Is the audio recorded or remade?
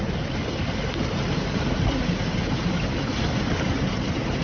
recorded